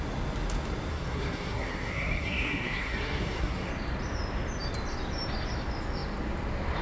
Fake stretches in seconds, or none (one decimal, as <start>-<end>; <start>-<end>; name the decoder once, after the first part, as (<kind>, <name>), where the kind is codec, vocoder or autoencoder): 0.9-3.7 (codec, SNAC)